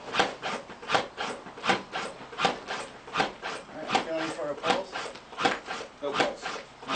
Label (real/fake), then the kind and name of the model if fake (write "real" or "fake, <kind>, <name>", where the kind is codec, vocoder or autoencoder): real